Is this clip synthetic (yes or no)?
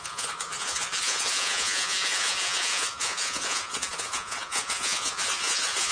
yes